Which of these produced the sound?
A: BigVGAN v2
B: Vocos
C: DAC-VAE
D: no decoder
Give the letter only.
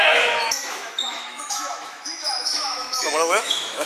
C